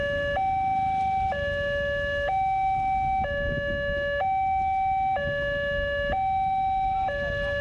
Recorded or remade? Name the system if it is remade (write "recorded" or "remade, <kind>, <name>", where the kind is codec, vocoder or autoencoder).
recorded